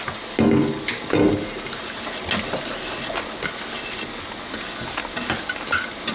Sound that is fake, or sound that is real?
real